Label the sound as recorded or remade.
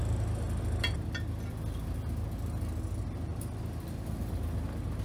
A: recorded